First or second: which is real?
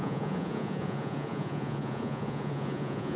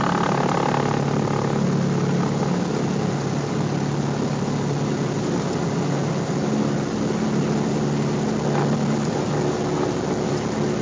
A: second